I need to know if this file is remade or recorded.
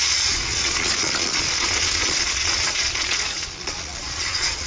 remade